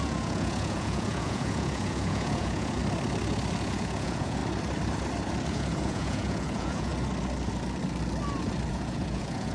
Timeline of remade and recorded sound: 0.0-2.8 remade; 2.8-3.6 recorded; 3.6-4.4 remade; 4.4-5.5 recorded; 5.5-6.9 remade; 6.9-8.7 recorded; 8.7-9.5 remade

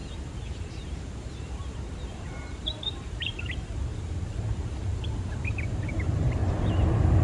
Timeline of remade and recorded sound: 0.0-6.4 remade; 6.4-7.2 recorded

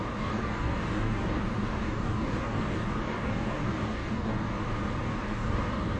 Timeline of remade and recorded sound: 0.0-4.6 remade; 4.6-5.1 recorded; 5.1-6.0 remade

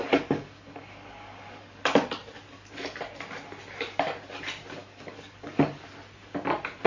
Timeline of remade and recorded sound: 0.0-1.8 remade; 1.8-4.8 recorded; 4.8-5.9 remade; 5.9-6.9 recorded

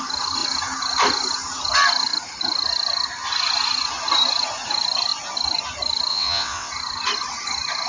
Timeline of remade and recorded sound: 0.0-6.1 recorded; 6.1-6.7 remade; 6.7-7.9 recorded